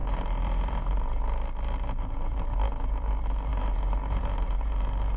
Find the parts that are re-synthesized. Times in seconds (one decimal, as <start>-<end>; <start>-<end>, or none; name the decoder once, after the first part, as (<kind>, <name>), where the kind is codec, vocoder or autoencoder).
0.0-3.1 (vocoder, BigVGAN v2); 3.5-5.2